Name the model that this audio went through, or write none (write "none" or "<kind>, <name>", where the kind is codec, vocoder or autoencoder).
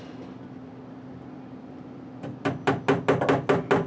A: none